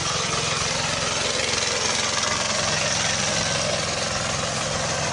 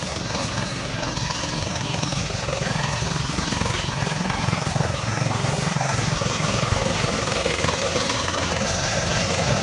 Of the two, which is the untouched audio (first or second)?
first